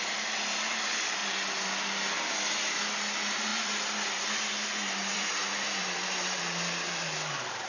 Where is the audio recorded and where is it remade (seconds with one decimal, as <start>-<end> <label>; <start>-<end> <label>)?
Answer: 0.0-1.2 remade; 1.2-2.5 recorded; 2.5-7.7 remade